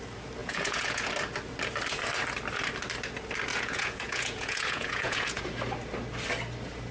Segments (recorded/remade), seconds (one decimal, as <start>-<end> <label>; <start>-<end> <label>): 0.0-0.4 recorded; 0.4-1.1 remade; 1.1-3.5 recorded; 3.5-5.4 remade; 5.4-6.9 recorded